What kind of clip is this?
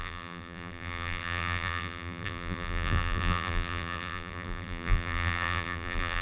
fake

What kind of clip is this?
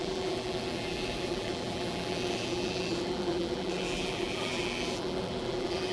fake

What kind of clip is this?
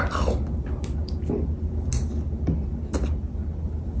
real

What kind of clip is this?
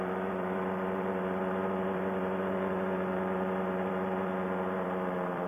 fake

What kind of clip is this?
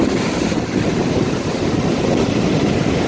fake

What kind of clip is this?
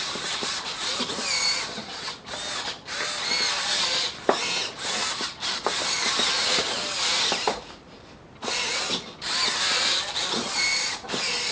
fake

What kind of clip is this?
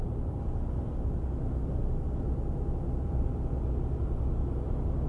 real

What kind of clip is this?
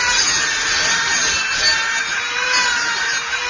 fake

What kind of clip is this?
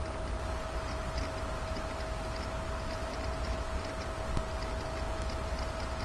real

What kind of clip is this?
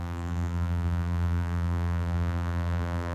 fake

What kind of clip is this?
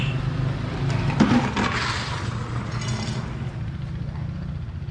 real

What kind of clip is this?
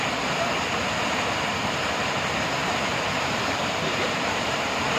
fake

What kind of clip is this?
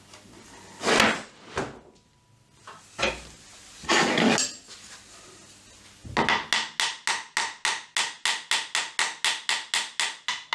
real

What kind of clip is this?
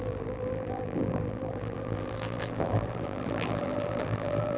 fake